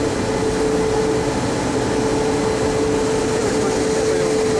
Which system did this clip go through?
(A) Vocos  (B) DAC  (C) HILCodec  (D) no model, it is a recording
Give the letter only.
D